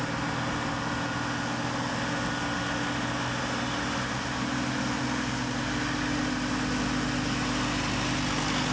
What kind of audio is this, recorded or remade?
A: recorded